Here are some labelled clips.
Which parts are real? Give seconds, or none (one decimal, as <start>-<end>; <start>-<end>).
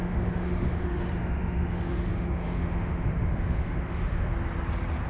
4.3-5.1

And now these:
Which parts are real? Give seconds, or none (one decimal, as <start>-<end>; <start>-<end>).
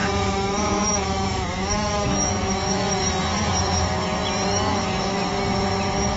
2.8-4.7; 5.2-6.2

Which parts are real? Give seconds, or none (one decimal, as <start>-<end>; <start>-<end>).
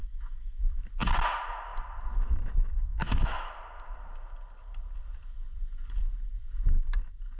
0.6-2.9; 3.5-7.4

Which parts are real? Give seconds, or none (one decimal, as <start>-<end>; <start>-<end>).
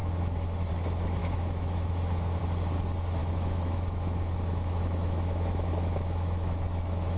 0.7-1.2; 2.4-3.2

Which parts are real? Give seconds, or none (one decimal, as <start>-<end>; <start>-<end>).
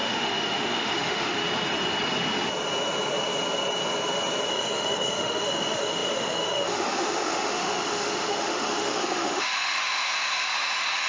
1.4-4.5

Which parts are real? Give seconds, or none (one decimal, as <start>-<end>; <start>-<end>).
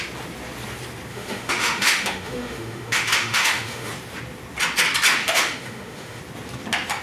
0.0-1.1; 3.9-5.2; 6.2-7.0